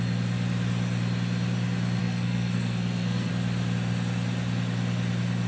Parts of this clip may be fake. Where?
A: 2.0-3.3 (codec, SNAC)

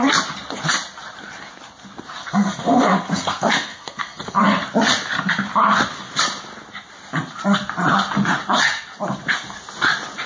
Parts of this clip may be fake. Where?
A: 2.2-4.4 (codec, SNAC)

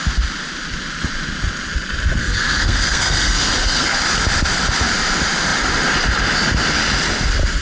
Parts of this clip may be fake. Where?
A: 2.2-4.0 (codec, SNAC)

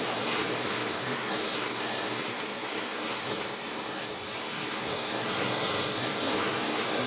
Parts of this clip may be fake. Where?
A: 0.0-7.1 (codec, SNAC)

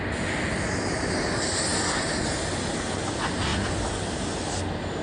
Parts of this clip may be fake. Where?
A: none